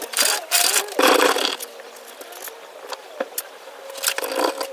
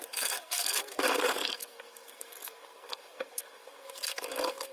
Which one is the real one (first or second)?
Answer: first